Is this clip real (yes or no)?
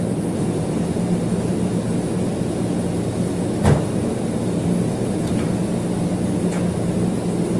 yes